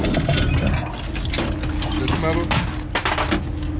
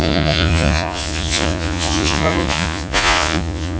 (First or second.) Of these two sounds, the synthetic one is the second